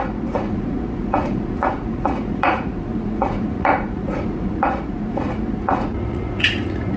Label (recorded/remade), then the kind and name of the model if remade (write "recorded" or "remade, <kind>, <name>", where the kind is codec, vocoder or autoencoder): remade, vocoder, Vocos